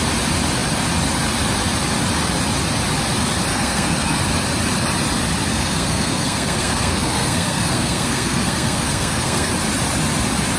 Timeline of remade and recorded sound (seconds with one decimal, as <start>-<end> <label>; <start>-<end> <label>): 0.0-3.5 recorded; 3.5-4.2 remade; 4.2-5.5 recorded; 5.5-9.5 remade; 9.5-10.6 recorded